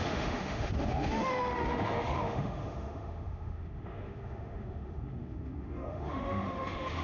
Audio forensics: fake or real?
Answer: fake